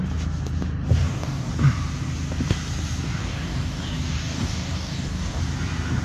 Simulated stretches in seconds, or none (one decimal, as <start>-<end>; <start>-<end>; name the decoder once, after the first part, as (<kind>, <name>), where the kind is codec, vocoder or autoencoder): 1.0-1.5 (codec, DAC); 3.2-5.4